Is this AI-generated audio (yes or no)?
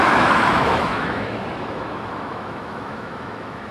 yes